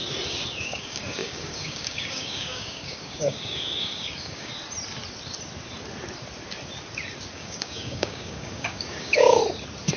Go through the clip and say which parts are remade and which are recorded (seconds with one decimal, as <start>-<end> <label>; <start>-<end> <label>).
0.0-0.6 recorded; 0.6-4.5 remade; 4.5-7.3 recorded; 7.3-9.4 remade; 9.4-10.0 recorded